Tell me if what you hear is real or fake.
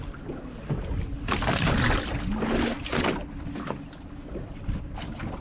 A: real